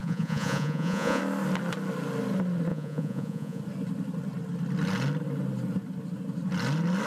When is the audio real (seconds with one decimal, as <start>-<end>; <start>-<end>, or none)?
1.2-2.7; 3.6-7.1